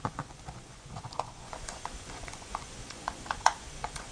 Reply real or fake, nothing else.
fake